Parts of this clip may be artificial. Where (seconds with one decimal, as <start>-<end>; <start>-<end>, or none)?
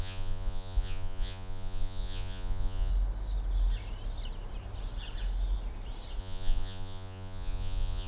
0.0-2.9; 6.2-8.1